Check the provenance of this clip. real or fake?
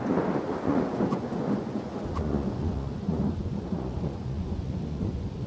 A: fake